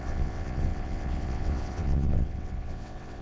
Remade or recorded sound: remade